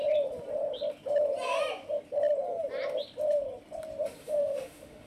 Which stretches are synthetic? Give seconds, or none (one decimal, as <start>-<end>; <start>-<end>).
4.2-5.1